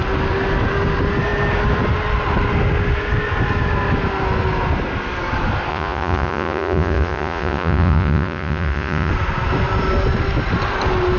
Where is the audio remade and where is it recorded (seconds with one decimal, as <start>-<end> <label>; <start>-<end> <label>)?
0.0-5.7 recorded; 5.7-9.1 remade; 9.1-11.2 recorded